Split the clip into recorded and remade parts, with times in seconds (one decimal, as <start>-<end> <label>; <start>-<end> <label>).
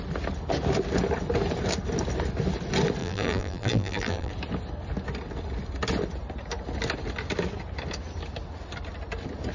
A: 0.0-3.0 recorded; 3.0-4.3 remade; 4.3-9.5 recorded